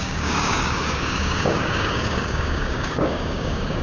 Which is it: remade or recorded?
remade